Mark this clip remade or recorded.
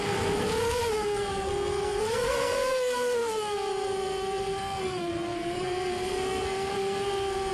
remade